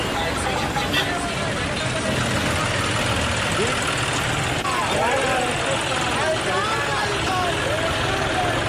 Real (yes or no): yes